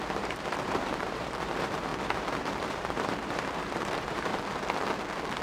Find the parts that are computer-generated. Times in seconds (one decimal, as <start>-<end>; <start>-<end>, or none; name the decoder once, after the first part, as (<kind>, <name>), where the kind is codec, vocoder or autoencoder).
0.0-1.9 (vocoder, BigVGAN v2); 2.4-4.3

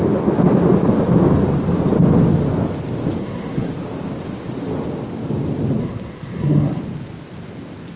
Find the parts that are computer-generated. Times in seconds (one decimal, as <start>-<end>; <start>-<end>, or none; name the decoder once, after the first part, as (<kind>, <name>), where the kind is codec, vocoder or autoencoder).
3.2-3.7 (codec, SNAC); 5.8-6.8